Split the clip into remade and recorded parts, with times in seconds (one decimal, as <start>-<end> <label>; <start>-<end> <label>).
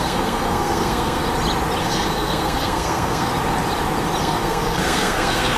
0.0-1.2 remade; 1.2-1.8 recorded; 1.8-3.3 remade; 3.3-4.2 recorded; 4.2-5.6 remade